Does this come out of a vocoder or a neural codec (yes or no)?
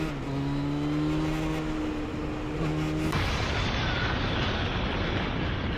no